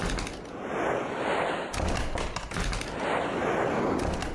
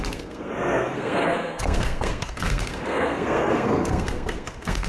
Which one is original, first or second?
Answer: first